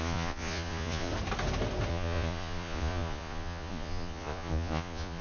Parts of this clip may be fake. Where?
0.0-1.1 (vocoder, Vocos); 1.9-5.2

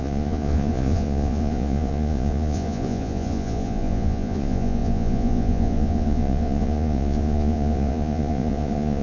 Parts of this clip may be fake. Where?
0.0-9.0 (vocoder, Vocos)

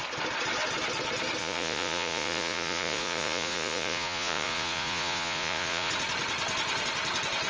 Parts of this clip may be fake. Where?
1.4-5.9 (vocoder, Vocos)

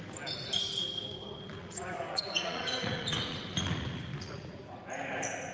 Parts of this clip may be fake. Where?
1.6-4.6 (vocoder, Vocos)

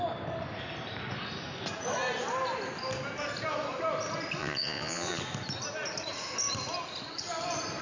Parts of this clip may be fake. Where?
4.4-5.2 (vocoder, Vocos)

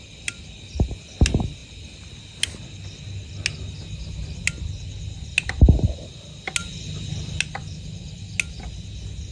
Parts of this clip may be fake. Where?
none

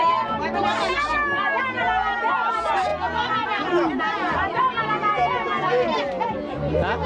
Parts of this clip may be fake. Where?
none